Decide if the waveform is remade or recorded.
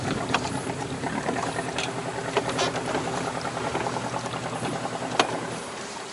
remade